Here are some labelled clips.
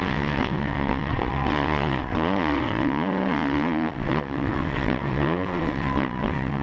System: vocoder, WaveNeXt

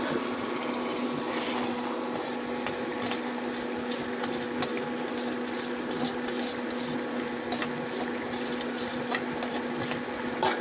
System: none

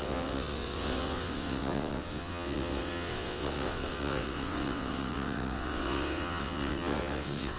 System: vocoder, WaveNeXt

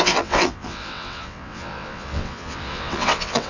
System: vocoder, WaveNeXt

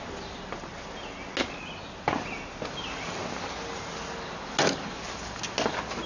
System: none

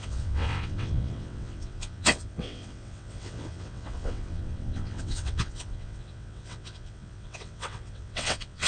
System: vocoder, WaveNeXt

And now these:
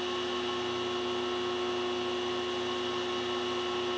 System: none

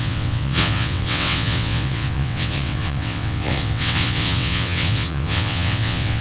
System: vocoder, WaveNeXt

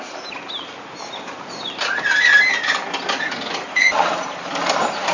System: none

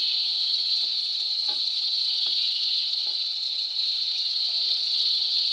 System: vocoder, WaveNeXt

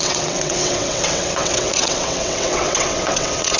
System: vocoder, WaveNeXt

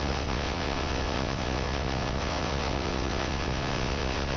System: vocoder, WaveNeXt